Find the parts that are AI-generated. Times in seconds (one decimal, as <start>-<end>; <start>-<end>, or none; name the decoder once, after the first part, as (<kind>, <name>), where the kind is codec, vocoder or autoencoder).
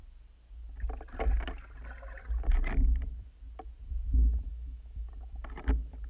4.5-5.1 (autoencoder, DAC-VAE)